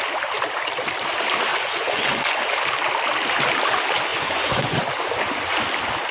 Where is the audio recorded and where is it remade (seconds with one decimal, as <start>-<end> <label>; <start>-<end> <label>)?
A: 0.0-1.5 recorded; 1.5-2.4 remade; 2.4-4.1 recorded; 4.1-4.8 remade; 4.8-6.1 recorded